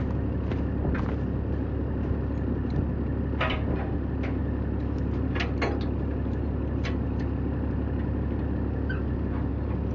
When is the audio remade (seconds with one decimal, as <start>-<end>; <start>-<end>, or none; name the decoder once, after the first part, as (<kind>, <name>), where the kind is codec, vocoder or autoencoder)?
none

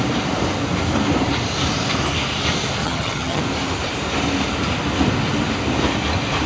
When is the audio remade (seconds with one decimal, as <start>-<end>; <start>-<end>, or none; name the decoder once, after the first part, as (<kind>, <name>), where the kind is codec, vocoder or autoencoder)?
2.8-3.4 (vocoder, HiFi-GAN)

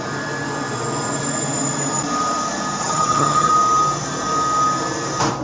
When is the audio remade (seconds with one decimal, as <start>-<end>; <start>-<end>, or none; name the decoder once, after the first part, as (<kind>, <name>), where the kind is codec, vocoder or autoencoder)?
2.8-3.5 (vocoder, HiFi-GAN)

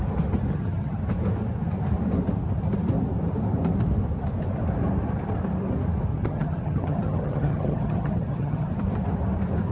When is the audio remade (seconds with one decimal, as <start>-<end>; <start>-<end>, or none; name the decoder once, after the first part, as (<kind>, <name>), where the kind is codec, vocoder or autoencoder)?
0.5-1.0 (vocoder, HiFi-GAN); 6.1-8.7

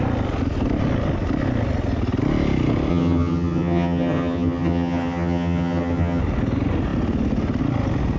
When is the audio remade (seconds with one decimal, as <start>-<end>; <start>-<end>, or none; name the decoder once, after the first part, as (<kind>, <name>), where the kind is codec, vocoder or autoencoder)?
2.9-6.2 (vocoder, HiFi-GAN)

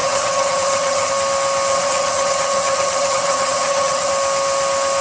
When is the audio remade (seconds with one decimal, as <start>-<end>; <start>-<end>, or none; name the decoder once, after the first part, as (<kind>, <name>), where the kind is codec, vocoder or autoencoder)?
0.0-1.1 (vocoder, HiFi-GAN); 1.7-4.1

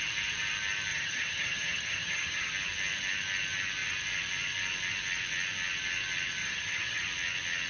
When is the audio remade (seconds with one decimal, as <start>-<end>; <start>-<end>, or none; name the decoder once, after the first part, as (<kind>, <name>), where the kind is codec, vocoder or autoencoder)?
0.9-2.5 (vocoder, HiFi-GAN); 6.4-7.0

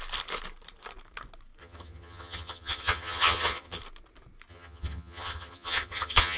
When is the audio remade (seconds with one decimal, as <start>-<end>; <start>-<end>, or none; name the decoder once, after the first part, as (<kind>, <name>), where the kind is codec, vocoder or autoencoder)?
1.6-3.8 (vocoder, HiFi-GAN); 4.5-6.4